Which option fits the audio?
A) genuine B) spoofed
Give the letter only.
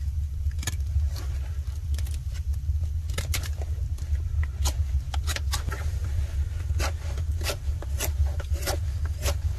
A